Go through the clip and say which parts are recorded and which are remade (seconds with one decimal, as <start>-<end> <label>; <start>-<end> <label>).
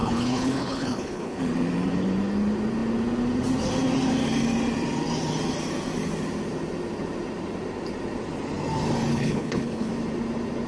0.0-1.4 remade; 1.4-9.1 recorded; 9.1-9.9 remade; 9.9-10.7 recorded